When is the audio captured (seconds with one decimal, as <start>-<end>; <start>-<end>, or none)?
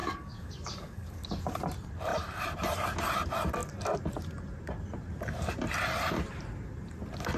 1.4-7.4